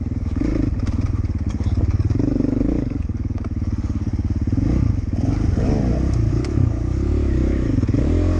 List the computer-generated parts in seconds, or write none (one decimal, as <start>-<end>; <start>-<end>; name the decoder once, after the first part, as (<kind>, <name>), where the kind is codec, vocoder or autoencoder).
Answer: 0.0-0.5 (codec, DAC); 1.5-4.1; 6.3-8.4